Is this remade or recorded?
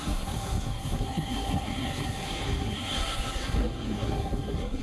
remade